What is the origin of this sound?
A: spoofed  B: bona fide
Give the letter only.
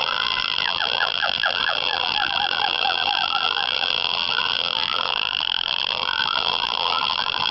A